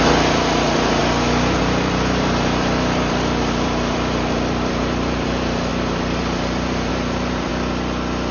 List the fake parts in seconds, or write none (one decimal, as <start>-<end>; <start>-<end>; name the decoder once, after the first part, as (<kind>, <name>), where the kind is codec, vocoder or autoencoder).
0.0-1.0 (vocoder, BigVGAN v2); 1.6-7.5